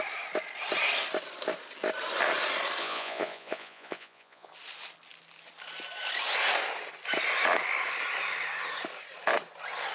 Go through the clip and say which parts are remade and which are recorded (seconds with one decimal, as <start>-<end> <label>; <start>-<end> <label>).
0.0-2.8 recorded; 2.8-4.5 remade; 4.5-9.9 recorded

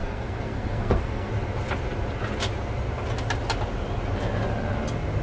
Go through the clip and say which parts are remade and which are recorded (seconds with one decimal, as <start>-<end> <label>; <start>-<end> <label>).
0.0-1.3 remade; 1.3-5.2 recorded